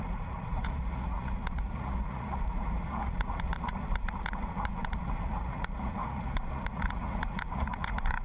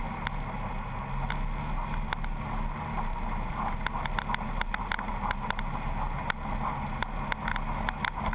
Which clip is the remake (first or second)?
first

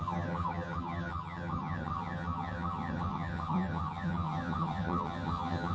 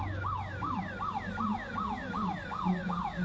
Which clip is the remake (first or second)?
first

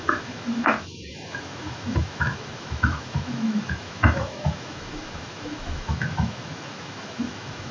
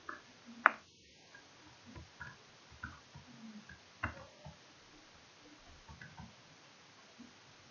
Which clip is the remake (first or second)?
first